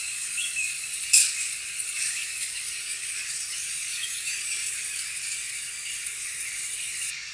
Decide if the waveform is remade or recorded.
remade